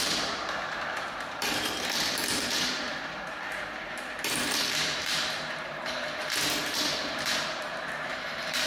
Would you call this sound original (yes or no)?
no